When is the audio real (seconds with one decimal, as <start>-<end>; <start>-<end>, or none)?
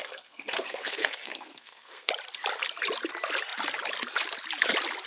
2.1-5.1